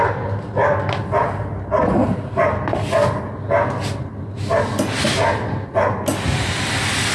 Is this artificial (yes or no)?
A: no